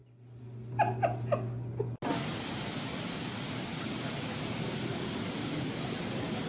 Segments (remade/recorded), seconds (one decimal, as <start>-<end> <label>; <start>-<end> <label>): 0.0-2.1 recorded; 2.1-6.5 remade